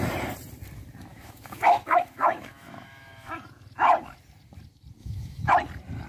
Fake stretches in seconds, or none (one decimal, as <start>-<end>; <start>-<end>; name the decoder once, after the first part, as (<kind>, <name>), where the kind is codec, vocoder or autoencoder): 1.1-3.3 (autoencoder, DAC-VAE); 5.0-5.5